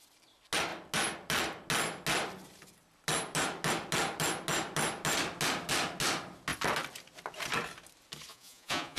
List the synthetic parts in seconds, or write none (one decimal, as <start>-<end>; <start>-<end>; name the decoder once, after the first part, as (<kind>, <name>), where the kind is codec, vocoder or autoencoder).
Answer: 8.3-9.0 (vocoder, Vocos)